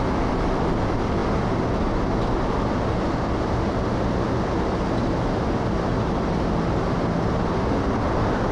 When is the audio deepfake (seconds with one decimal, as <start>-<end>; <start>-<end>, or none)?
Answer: none